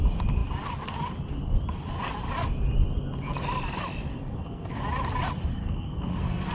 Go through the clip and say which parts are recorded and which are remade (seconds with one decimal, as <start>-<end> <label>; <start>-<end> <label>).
0.0-4.1 recorded; 4.1-4.8 remade; 4.8-5.5 recorded; 5.5-6.5 remade